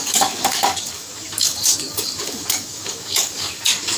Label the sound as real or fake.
fake